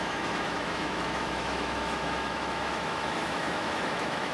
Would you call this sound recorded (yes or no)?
no